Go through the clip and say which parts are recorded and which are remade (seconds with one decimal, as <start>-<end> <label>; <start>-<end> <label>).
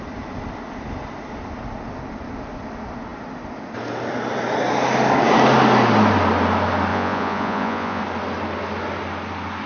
0.0-6.9 recorded; 6.9-8.0 remade; 8.0-9.7 recorded